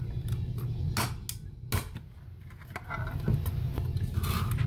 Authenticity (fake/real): real